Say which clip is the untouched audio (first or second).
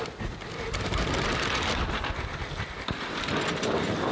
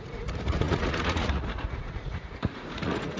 first